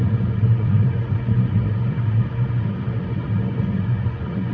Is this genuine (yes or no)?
no